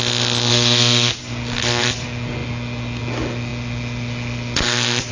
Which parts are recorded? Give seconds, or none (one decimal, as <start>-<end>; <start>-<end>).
0.0-0.5; 1.2-5.1